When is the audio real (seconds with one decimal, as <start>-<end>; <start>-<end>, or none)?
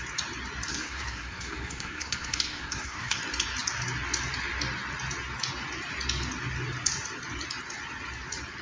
0.0-0.7; 3.2-8.6